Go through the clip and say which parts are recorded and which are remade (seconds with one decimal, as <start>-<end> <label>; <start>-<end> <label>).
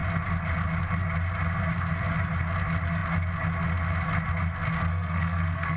0.0-4.9 recorded; 4.9-5.8 remade